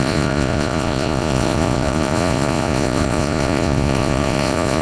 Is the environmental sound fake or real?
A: fake